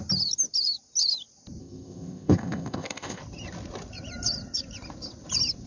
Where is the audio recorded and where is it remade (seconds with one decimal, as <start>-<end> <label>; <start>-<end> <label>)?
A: 0.0-1.6 recorded; 1.6-3.2 remade; 3.2-5.7 recorded